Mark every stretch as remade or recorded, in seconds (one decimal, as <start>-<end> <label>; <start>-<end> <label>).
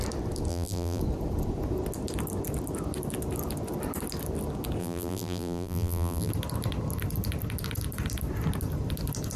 0.0-0.5 recorded; 0.5-1.0 remade; 1.0-4.8 recorded; 4.8-6.3 remade; 6.3-9.4 recorded